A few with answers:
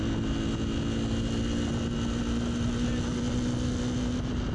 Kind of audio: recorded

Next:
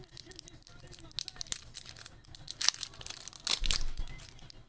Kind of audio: recorded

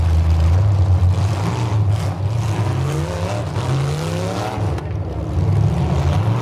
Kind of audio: recorded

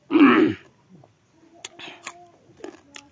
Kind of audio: recorded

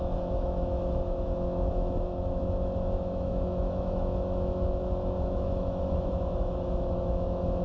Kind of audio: remade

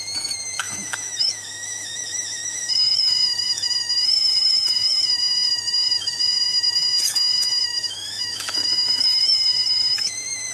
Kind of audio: remade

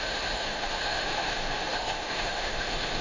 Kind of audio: remade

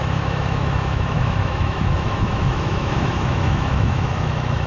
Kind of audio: remade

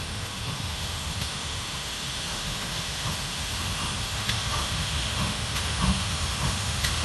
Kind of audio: remade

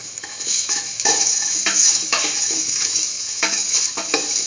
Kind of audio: remade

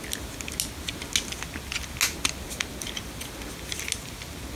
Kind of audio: recorded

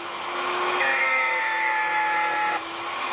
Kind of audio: remade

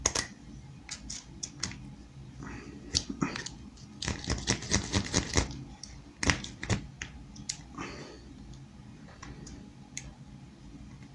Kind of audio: recorded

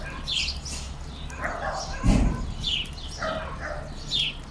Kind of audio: recorded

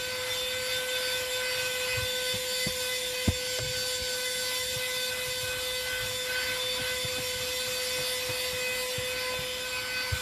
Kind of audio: recorded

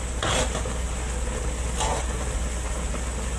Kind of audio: recorded